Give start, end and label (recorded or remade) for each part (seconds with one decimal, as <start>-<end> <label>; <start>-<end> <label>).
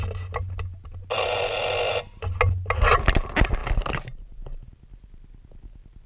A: 0.0-6.1 recorded